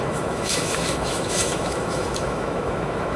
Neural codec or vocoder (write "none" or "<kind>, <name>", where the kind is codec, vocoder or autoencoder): autoencoder, DAC-VAE